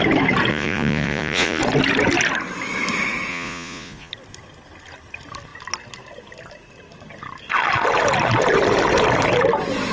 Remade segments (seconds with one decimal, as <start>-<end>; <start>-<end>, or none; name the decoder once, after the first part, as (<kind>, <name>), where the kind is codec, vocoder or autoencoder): 0.5-1.6 (vocoder, Vocos); 3.3-4.1